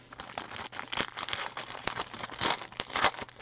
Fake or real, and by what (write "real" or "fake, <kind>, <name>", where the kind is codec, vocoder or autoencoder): real